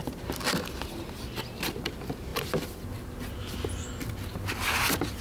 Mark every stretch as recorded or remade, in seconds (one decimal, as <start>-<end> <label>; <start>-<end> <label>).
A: 0.0-5.2 recorded